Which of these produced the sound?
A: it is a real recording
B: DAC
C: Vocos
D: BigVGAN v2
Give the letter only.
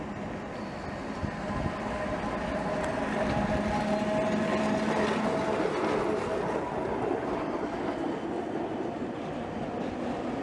A